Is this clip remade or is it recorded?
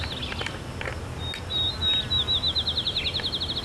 recorded